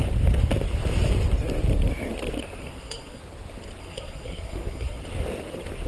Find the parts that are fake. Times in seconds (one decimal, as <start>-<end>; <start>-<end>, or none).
2.6-3.2; 3.8-5.0